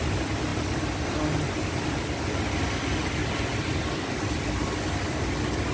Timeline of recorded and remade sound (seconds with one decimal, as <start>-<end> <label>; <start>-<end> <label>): 0.0-5.7 recorded